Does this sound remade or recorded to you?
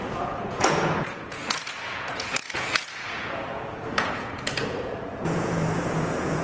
remade